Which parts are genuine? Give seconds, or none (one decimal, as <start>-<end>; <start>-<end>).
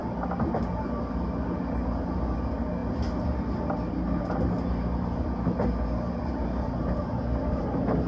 0.0-8.1